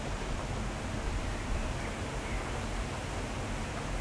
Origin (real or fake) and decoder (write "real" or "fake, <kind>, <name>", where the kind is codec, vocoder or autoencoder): real